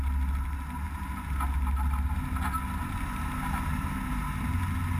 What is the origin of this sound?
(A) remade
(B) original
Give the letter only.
B